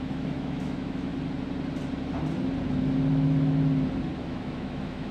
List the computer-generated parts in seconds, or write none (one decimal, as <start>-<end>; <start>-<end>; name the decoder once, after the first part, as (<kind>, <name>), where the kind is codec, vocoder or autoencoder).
0.0-1.1 (autoencoder, DAC-VAE); 4.2-5.1